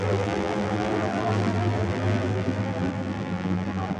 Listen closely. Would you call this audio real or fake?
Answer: fake